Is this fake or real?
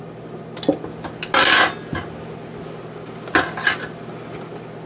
real